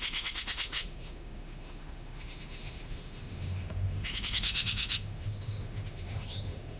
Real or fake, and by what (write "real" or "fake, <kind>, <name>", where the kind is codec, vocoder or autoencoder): fake, autoencoder, DAC-VAE